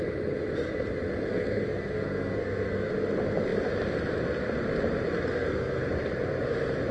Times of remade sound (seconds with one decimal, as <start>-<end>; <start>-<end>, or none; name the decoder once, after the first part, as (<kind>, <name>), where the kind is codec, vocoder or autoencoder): 1.3-2.9 (codec, SNAC); 5.3-5.8